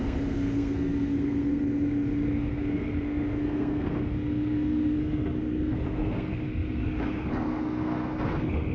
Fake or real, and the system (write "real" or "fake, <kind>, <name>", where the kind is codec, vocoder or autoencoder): fake, codec, SNAC